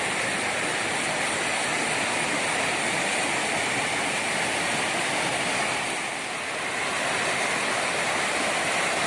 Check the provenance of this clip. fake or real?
real